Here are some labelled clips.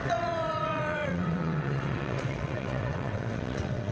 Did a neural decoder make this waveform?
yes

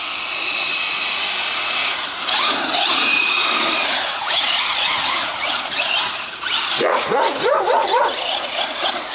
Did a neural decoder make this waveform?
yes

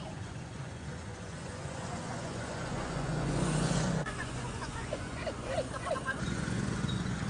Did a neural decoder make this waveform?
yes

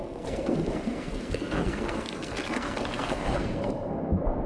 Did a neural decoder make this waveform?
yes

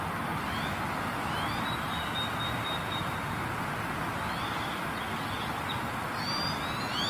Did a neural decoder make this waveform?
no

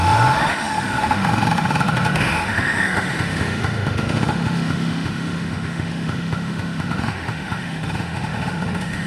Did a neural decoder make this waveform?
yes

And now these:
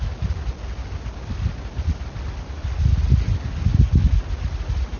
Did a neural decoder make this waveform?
no